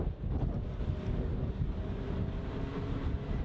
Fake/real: real